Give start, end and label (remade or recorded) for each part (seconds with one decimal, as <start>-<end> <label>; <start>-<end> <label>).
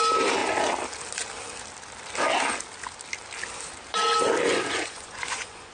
0.0-4.5 recorded; 4.5-5.7 remade